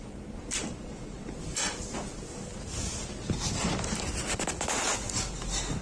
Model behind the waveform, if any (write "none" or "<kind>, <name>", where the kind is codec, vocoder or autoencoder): none